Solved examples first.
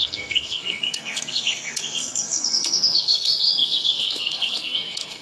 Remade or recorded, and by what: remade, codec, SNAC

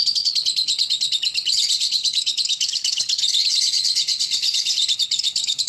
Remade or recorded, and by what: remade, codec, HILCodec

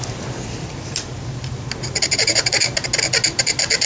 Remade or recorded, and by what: recorded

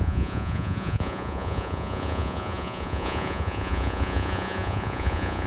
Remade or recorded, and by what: remade, vocoder, Vocos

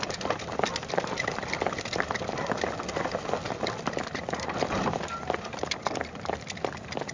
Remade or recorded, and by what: recorded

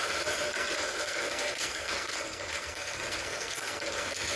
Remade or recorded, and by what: remade, codec, SNAC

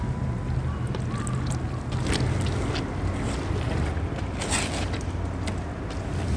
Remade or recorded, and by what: recorded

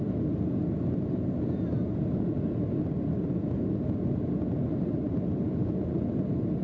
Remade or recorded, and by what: recorded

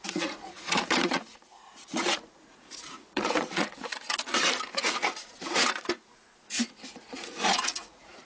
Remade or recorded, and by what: remade, vocoder, Vocos